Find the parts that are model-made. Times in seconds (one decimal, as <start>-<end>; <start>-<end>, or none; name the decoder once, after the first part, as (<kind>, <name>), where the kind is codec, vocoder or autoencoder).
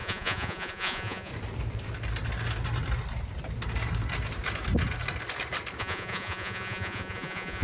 0.0-1.3 (vocoder, Vocos); 5.8-7.6